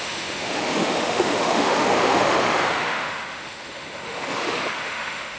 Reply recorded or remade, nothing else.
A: remade